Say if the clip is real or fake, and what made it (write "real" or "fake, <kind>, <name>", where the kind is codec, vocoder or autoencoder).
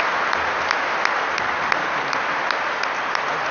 real